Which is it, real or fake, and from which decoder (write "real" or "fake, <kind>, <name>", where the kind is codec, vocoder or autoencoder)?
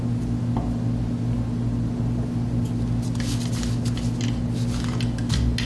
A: real